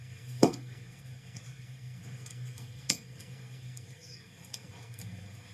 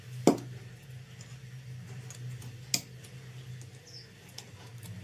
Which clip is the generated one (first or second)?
first